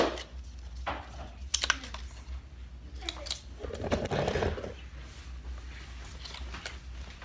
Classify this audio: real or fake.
real